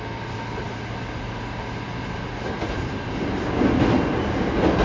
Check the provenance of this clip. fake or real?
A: real